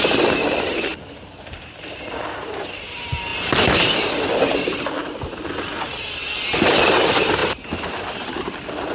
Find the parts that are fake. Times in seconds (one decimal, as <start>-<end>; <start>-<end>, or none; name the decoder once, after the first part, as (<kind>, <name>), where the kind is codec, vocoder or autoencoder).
none